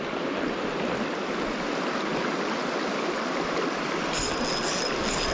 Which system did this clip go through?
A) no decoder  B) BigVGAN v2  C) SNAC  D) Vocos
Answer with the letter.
A